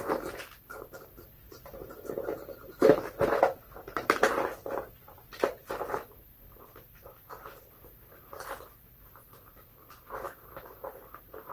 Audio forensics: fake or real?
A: fake